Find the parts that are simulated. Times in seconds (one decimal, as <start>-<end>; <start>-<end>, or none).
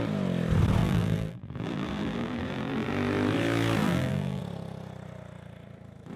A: 0.8-2.9; 3.8-4.4